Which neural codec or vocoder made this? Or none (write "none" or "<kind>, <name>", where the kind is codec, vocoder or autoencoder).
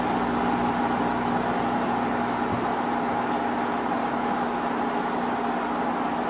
none